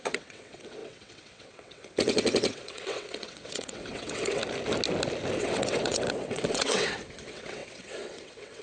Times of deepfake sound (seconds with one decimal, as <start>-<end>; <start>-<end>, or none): 0.0-4.4; 5.4-8.6